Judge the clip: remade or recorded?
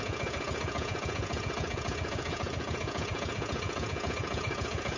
remade